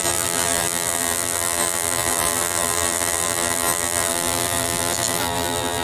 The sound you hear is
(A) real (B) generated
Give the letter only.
B